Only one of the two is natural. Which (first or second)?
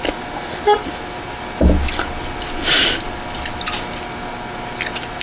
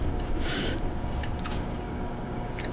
first